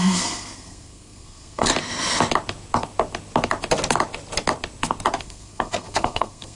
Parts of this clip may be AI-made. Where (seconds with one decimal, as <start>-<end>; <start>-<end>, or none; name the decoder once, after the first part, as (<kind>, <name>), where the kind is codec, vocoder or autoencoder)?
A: 0.0-1.7 (codec, SNAC); 5.2-6.5